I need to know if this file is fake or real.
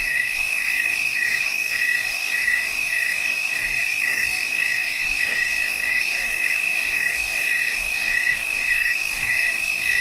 fake